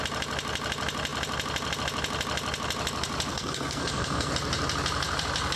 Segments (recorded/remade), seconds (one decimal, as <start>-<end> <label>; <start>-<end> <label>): 0.0-3.3 recorded; 3.3-4.3 remade; 4.3-5.6 recorded